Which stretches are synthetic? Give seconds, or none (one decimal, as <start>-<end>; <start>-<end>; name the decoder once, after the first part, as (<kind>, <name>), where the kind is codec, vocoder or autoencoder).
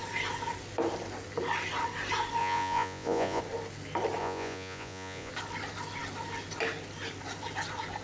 2.4-3.4 (vocoder, Vocos); 4.2-5.3